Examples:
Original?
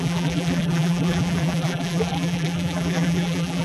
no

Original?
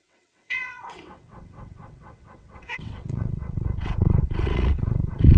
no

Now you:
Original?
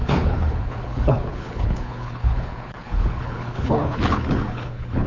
no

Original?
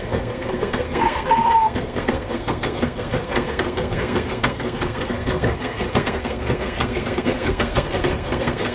no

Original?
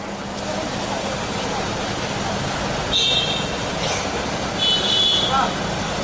yes